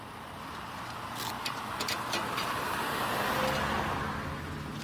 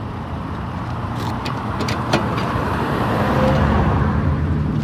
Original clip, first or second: first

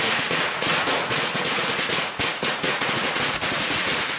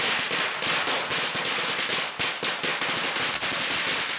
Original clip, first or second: second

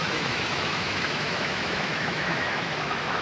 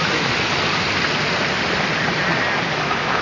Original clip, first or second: second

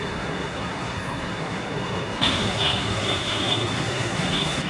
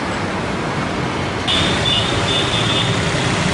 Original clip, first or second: second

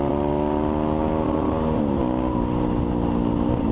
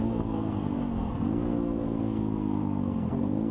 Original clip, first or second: first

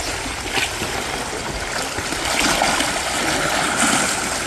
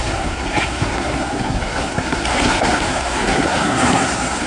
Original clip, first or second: first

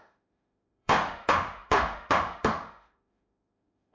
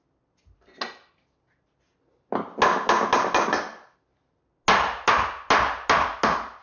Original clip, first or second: second